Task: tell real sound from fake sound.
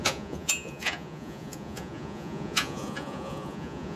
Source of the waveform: fake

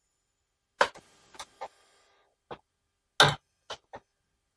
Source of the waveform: real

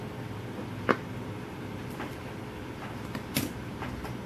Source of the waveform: real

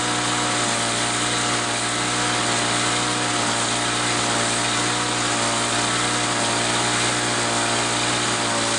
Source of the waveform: real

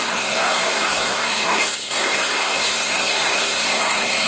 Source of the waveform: fake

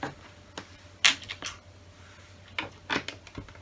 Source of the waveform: real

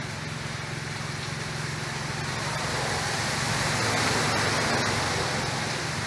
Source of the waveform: real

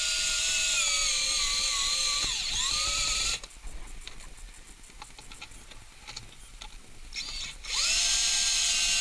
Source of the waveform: real